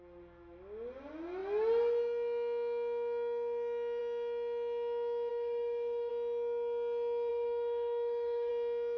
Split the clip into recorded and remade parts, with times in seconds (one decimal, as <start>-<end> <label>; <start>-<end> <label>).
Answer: 0.0-5.3 recorded; 5.3-6.1 remade; 6.1-7.3 recorded; 7.3-8.5 remade; 8.5-9.0 recorded